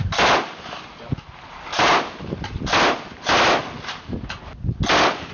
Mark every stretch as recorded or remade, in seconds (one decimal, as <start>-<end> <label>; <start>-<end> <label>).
0.0-5.3 recorded